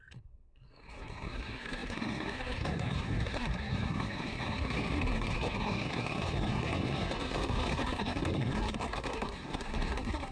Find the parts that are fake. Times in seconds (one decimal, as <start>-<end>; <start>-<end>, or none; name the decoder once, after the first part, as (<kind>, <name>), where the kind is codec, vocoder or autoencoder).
0.0-10.3 (codec, SNAC)